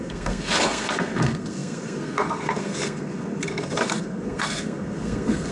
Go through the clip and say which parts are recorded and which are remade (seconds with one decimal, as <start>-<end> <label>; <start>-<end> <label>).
0.0-5.5 remade